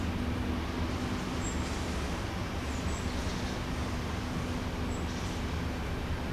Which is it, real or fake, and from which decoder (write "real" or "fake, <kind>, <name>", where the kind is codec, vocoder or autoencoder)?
real